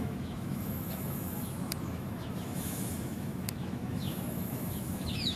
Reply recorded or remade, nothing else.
remade